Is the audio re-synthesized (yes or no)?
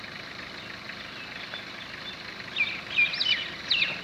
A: no